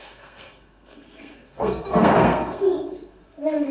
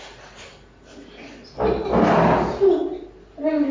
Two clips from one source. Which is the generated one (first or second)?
first